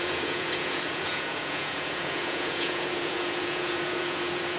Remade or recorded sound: remade